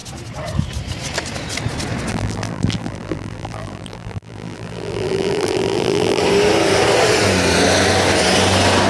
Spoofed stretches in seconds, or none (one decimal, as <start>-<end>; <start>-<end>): 2.1-6.2